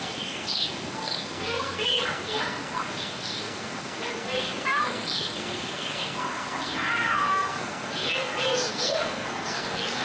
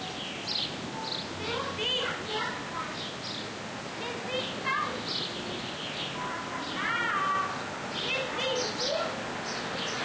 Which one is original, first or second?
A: second